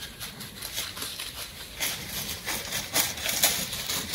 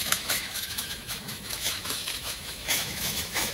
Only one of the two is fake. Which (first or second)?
second